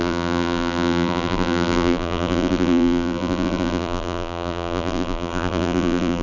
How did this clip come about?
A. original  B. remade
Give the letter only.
B